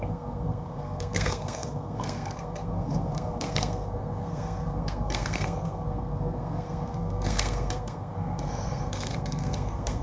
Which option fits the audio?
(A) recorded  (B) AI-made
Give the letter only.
B